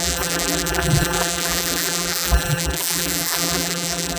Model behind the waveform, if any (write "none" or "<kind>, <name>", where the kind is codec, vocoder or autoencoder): vocoder, BigVGAN v2